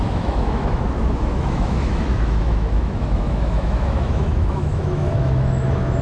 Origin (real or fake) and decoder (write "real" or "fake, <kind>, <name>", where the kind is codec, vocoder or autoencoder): fake, autoencoder, DAC-VAE